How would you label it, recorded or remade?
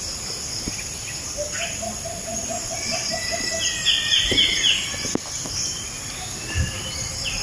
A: recorded